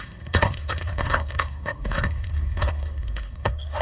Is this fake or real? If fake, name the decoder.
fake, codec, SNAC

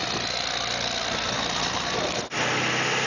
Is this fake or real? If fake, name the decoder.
real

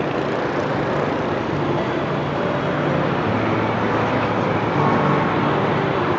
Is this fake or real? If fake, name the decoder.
real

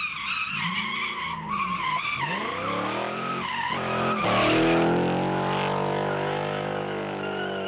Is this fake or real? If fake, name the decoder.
real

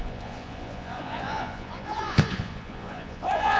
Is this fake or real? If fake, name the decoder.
fake, vocoder, Vocos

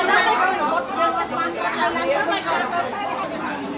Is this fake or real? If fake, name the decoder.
real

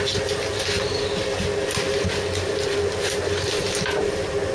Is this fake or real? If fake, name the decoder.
real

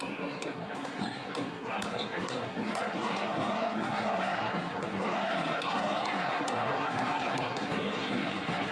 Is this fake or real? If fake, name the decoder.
fake, codec, SNAC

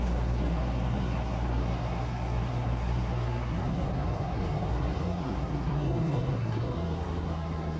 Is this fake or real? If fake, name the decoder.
fake, codec, SNAC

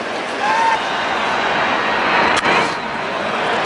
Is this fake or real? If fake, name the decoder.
fake, vocoder, Vocos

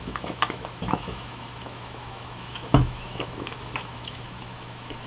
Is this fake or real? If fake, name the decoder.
fake, autoencoder, DAC-VAE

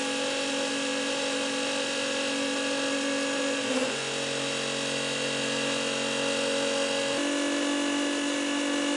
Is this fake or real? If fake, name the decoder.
real